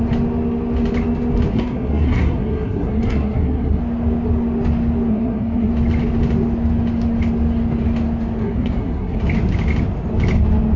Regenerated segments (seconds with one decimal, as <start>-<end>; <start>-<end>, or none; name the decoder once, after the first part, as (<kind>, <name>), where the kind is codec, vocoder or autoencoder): 1.5-3.8 (codec, SNAC); 5.1-5.7; 8.4-9.2